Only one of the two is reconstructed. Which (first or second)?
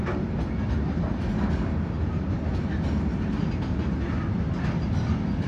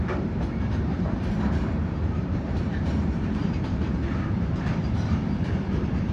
second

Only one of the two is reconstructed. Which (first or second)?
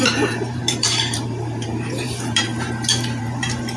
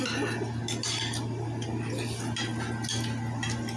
first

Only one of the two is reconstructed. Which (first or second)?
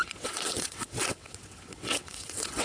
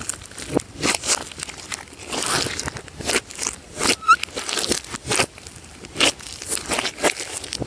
first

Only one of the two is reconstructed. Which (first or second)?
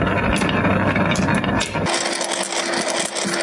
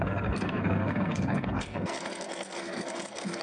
second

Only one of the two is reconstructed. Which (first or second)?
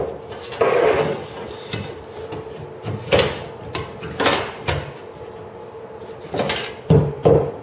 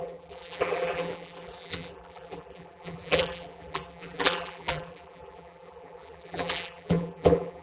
second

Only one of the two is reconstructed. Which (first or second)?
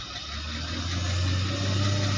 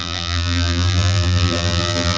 second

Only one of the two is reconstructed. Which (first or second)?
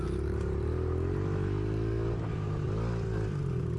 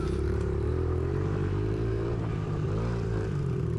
second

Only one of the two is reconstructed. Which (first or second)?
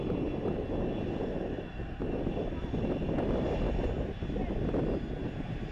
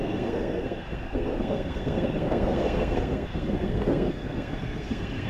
second